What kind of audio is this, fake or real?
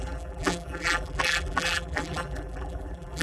fake